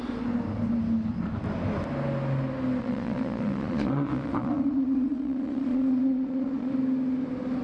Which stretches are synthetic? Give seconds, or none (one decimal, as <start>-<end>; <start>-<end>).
2.8-6.7